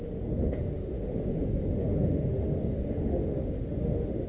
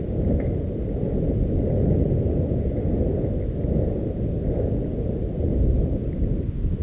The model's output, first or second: first